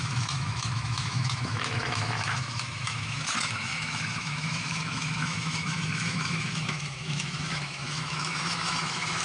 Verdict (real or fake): fake